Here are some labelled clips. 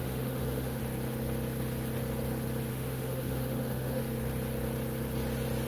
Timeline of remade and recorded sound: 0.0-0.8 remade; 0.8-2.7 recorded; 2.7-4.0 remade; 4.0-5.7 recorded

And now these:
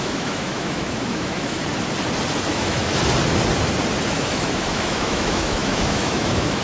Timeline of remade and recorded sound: 0.0-1.6 remade; 1.6-2.5 recorded; 2.5-2.9 remade; 2.9-4.1 recorded; 4.1-6.6 remade

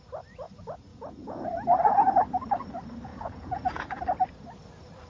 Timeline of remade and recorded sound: 0.0-0.9 recorded; 0.9-1.5 remade; 1.5-3.1 recorded; 3.1-4.0 remade; 4.0-5.1 recorded

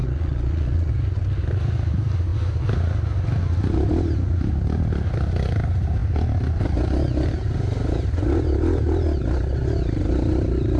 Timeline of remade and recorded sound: 0.0-0.9 remade; 0.9-10.8 recorded

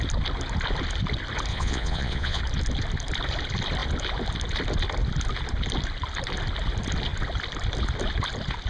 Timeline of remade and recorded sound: 0.0-1.5 recorded; 1.5-2.4 remade; 2.4-8.7 recorded

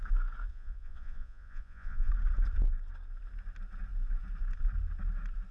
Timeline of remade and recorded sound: 0.0-0.5 recorded; 0.5-2.1 remade; 2.1-5.5 recorded

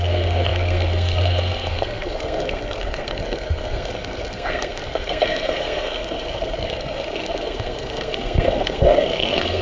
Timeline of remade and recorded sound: 0.0-9.6 remade